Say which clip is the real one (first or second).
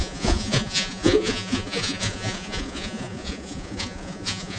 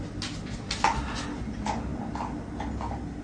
second